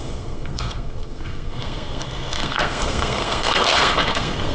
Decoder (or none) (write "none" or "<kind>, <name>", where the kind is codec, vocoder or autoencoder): codec, SNAC